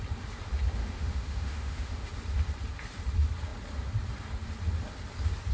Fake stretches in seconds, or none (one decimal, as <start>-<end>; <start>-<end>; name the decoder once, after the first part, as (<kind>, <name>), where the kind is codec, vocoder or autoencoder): 0.8-2.1 (autoencoder, DAC-VAE)